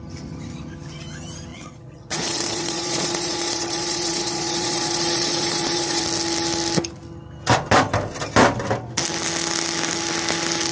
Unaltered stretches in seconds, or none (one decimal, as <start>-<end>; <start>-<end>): 0.0-1.5; 6.0-10.7